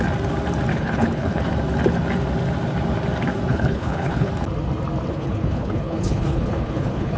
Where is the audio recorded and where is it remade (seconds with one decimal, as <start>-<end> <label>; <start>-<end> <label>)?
0.0-0.7 recorded; 0.7-1.5 remade; 1.5-3.5 recorded; 3.5-4.3 remade; 4.3-5.1 recorded; 5.1-7.2 remade